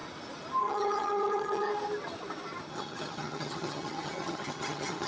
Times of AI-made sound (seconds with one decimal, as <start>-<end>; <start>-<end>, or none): 0.6-1.7; 2.7-5.1